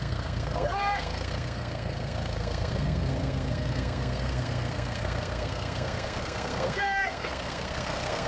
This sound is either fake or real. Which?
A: fake